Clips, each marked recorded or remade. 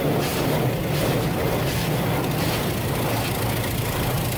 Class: recorded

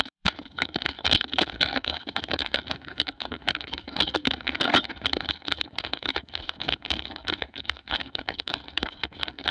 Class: remade